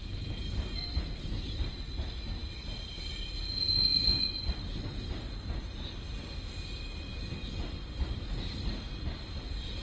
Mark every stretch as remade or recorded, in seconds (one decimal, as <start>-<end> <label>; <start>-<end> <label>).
0.0-9.8 recorded